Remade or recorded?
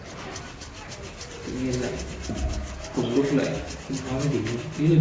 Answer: recorded